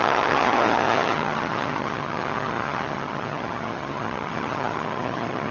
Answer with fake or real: fake